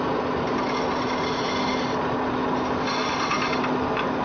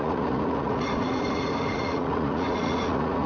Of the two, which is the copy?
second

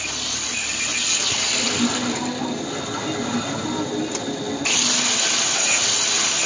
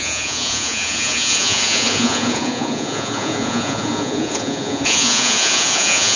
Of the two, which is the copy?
second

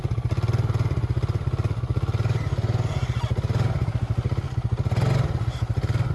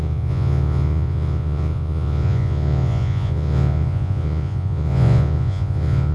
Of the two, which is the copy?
second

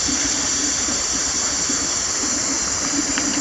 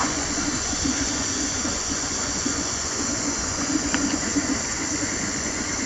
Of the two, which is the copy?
second